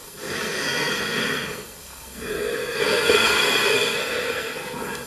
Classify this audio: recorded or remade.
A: remade